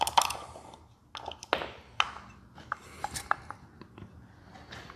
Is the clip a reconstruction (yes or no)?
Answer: no